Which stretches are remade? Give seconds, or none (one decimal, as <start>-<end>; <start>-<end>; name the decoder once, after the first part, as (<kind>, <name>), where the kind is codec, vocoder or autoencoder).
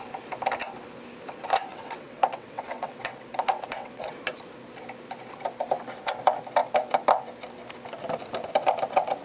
1.7-4.2 (vocoder, WaveNeXt)